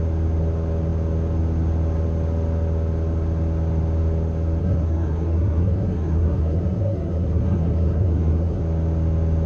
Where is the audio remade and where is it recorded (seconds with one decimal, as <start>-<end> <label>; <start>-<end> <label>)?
0.0-4.6 recorded; 4.6-8.6 remade; 8.6-9.5 recorded